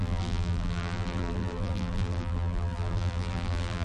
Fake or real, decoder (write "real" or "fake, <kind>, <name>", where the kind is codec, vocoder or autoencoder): fake, vocoder, BigVGAN v2